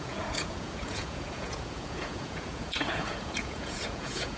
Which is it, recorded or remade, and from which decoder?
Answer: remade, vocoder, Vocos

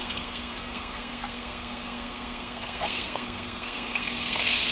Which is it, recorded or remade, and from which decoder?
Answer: remade, codec, SNAC